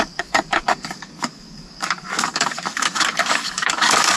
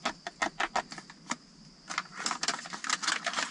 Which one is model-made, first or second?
first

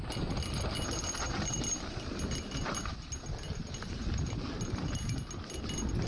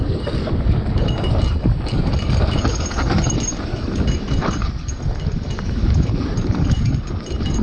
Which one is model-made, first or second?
second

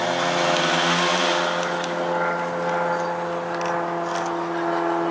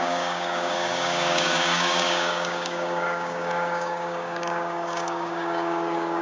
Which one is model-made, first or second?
second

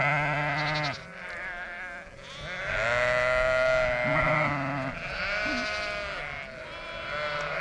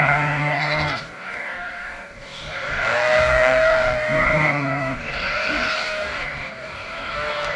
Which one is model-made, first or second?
second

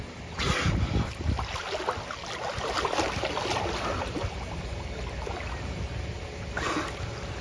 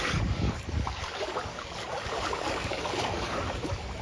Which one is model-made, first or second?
second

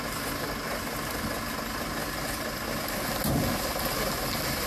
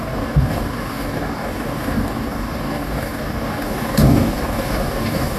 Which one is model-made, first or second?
second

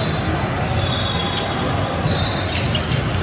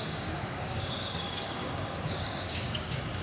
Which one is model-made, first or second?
second